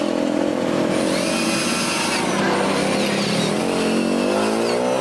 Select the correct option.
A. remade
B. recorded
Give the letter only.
B